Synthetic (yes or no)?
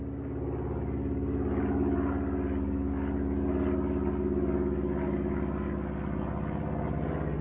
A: no